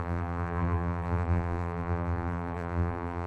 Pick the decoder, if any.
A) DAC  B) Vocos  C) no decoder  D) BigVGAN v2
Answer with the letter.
D